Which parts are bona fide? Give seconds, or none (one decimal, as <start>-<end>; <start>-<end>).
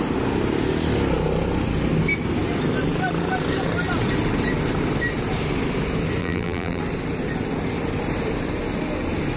0.0-6.2; 6.8-9.4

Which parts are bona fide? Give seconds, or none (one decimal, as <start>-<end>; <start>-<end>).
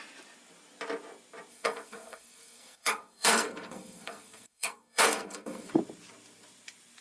0.0-1.5; 5.7-7.0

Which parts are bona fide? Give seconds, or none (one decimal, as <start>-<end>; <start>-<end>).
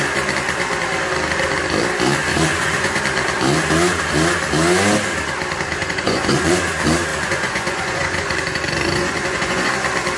0.0-2.3; 3.0-5.8; 6.5-7.1; 9.7-10.2